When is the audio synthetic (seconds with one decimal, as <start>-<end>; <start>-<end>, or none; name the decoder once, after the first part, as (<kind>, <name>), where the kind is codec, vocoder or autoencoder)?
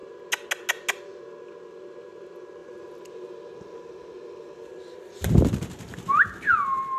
none